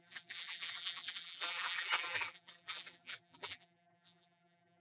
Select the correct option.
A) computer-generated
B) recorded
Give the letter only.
A